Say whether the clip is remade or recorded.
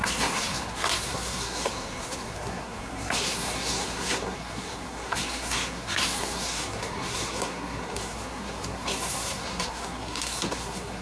remade